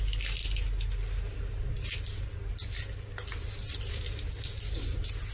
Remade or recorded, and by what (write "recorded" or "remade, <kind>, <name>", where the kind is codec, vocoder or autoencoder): recorded